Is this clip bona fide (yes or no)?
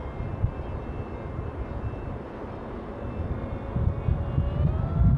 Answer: yes